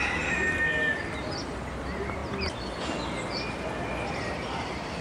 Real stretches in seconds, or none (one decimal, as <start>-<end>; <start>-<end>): 0.0-5.0